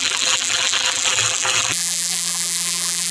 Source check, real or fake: fake